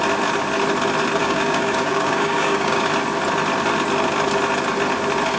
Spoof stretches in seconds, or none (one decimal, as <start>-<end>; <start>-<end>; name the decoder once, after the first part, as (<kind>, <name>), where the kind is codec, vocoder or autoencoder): 1.2-2.8 (codec, DAC)